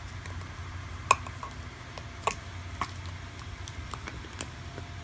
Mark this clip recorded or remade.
recorded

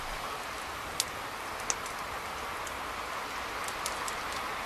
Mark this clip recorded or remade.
recorded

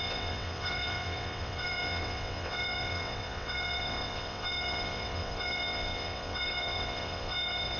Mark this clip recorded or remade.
remade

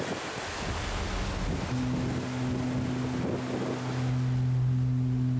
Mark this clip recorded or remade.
recorded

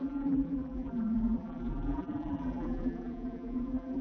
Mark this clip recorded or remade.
remade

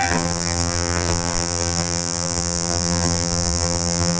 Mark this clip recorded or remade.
remade